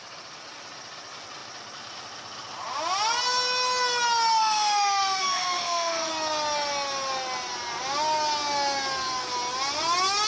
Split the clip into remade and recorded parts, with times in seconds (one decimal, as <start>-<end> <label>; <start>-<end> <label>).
0.0-4.4 recorded; 4.4-6.1 remade; 6.1-10.3 recorded